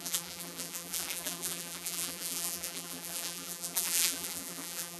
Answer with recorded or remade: remade